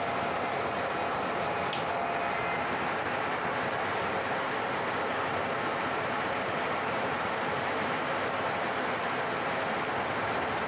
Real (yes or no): yes